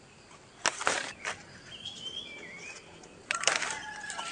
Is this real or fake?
fake